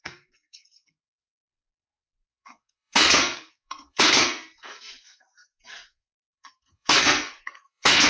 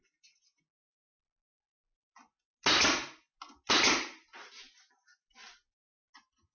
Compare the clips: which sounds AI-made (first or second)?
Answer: first